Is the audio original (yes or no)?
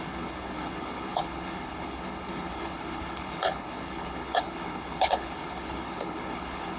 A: no